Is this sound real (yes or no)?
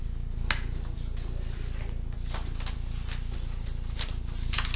yes